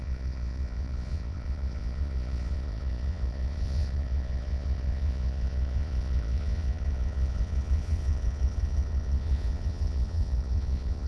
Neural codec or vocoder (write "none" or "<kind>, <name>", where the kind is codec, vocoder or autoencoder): vocoder, Vocos